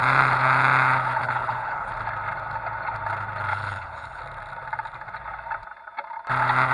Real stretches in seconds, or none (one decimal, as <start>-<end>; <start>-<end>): 0.0-1.2; 1.9-3.5; 4.2-6.7